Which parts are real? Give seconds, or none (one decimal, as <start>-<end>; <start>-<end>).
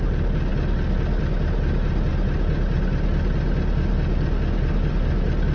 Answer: 0.0-5.5